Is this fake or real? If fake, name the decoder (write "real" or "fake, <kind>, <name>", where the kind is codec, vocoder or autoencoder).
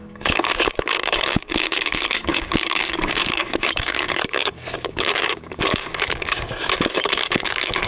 fake, codec, DAC